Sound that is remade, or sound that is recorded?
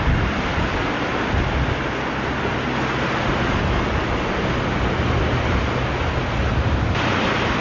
recorded